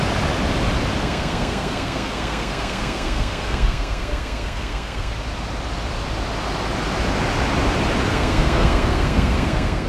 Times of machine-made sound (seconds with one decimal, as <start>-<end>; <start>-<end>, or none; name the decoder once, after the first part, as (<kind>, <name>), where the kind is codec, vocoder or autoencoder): 1.0-5.1 (codec, SNAC); 8.1-9.9

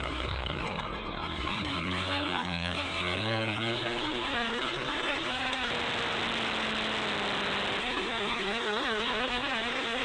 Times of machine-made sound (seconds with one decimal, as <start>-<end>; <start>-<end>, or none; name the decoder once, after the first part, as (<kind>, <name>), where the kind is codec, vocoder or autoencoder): 0.0-5.7 (codec, SNAC); 7.8-10.0

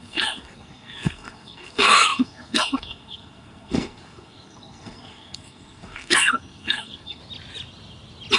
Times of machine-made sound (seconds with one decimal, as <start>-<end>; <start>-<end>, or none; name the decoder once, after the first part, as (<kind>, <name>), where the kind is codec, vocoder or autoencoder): 0.0-7.2 (codec, SNAC)

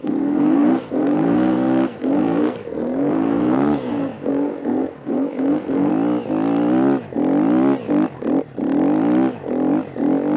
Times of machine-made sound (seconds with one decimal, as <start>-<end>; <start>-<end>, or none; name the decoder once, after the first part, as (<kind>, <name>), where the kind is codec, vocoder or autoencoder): 0.0-5.9 (codec, SNAC)